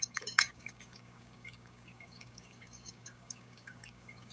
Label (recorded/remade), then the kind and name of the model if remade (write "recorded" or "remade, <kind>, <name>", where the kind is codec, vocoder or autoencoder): remade, codec, DAC